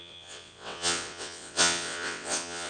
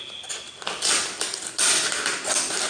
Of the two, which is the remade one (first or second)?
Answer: first